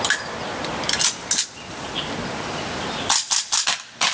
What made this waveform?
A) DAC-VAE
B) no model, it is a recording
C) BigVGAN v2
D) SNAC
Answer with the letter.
B